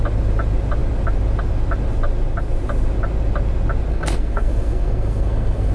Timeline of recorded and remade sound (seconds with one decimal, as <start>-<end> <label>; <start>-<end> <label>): 0.0-3.9 recorded; 3.9-5.7 remade